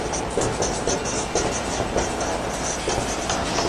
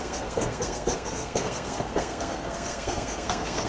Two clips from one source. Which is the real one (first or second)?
first